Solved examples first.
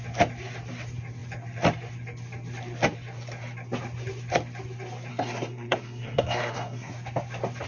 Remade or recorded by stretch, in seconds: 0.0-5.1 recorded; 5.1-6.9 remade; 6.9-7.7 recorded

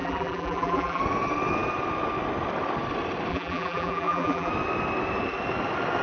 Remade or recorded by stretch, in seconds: 0.0-1.0 remade; 1.0-3.3 recorded; 3.3-4.5 remade; 4.5-6.0 recorded

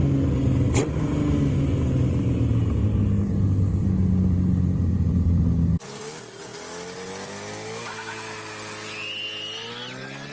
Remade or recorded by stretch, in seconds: 0.0-10.3 recorded

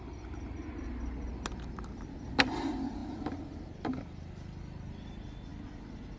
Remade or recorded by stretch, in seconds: 0.0-6.2 recorded

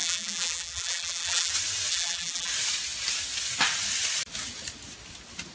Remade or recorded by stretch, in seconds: 0.0-1.5 remade; 1.5-1.9 recorded; 1.9-2.5 remade; 2.5-5.5 recorded

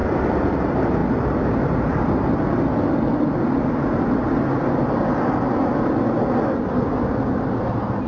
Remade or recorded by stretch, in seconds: 0.0-8.1 recorded